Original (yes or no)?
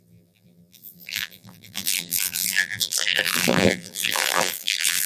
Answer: no